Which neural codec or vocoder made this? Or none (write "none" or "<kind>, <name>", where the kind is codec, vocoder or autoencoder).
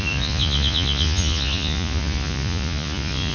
vocoder, Vocos